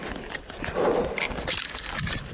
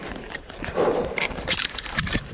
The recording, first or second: first